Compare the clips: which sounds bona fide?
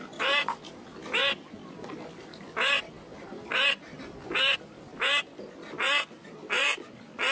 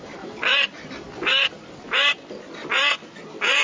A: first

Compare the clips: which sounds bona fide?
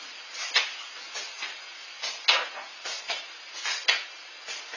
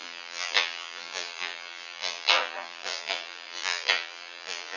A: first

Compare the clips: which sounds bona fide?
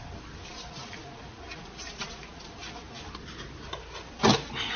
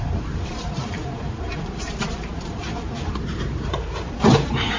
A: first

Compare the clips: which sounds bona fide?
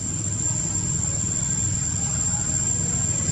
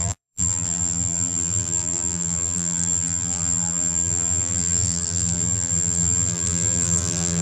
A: first